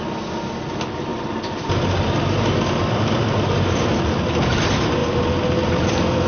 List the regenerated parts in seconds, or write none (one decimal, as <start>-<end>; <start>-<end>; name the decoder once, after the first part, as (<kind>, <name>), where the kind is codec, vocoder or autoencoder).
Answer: 1.1-3.2 (vocoder, BigVGAN v2); 3.9-4.5